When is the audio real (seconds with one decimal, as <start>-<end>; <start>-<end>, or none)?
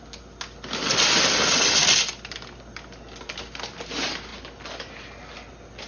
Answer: 0.0-5.9